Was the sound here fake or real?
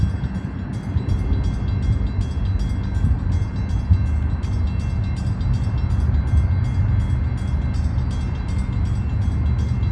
real